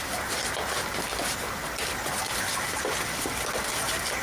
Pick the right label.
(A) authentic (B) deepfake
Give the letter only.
A